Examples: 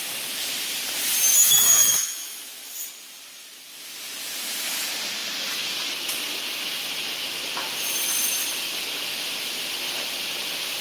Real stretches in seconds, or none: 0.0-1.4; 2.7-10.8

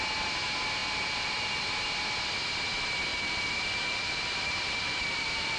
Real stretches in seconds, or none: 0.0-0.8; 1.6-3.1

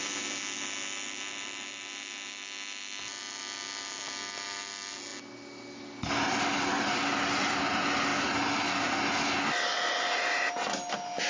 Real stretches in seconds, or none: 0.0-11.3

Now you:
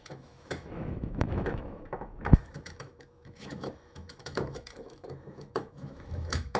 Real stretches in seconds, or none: none

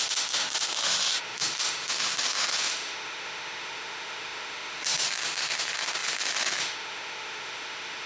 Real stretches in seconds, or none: none